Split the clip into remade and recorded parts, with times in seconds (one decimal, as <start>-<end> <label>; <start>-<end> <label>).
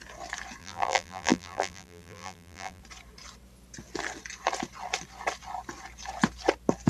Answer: 0.0-0.6 recorded; 0.6-2.8 remade; 2.8-6.9 recorded